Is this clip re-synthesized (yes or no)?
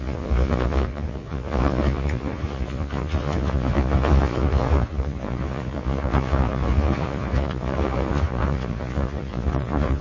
yes